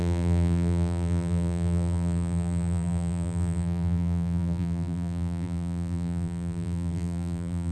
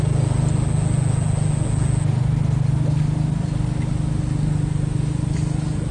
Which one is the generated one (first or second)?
first